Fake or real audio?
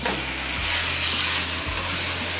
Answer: real